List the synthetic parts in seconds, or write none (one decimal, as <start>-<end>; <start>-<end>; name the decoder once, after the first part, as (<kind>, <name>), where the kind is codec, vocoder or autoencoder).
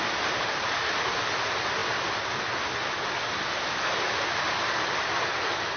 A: none